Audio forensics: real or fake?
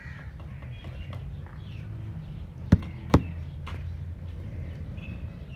fake